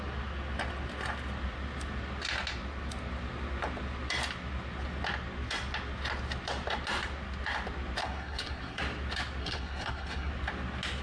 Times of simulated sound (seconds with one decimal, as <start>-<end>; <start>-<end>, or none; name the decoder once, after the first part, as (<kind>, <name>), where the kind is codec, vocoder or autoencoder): 8.0-8.8 (codec, SNAC); 9.4-10.3